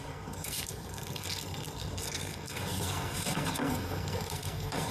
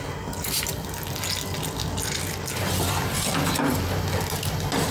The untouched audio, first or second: second